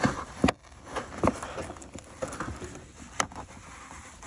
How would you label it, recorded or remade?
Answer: recorded